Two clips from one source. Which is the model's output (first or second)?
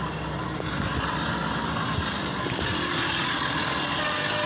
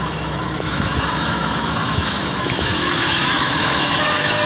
second